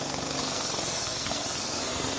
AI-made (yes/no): yes